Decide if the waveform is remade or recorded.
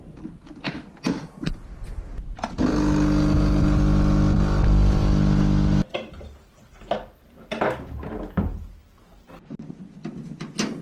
recorded